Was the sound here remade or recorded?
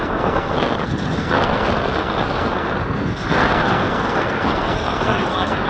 remade